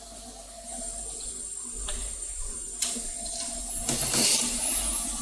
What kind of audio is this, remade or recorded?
remade